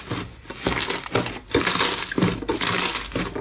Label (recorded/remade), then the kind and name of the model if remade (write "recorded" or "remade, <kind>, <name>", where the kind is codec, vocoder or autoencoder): recorded